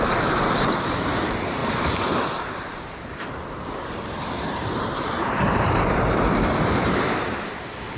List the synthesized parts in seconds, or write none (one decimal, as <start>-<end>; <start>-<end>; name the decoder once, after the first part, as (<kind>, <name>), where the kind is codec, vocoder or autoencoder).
0.0-8.0 (vocoder, BigVGAN v2)